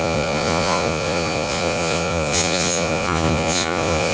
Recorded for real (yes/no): no